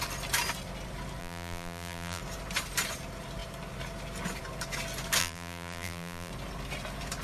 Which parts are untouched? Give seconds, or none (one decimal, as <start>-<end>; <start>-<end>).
0.0-1.2; 2.2-5.2; 6.3-7.2